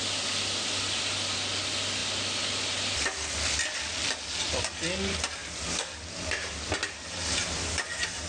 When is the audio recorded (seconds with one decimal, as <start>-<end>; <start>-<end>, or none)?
0.8-5.4; 7.2-8.3